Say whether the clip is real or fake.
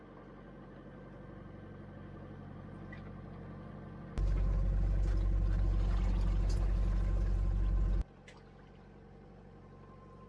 real